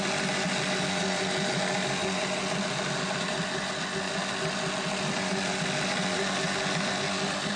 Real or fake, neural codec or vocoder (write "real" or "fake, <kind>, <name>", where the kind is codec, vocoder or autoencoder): real